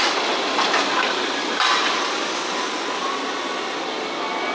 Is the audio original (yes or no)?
yes